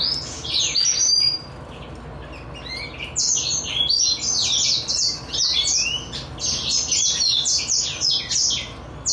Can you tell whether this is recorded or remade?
recorded